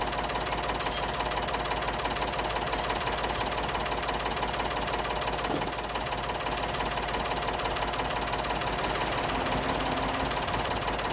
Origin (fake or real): real